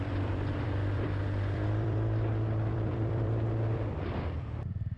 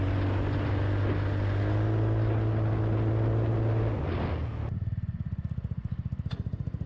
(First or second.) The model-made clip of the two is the first